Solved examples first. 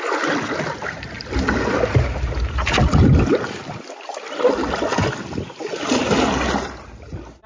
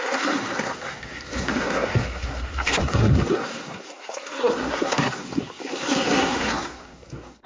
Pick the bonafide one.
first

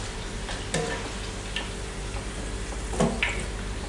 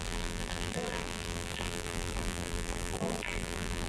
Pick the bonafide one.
first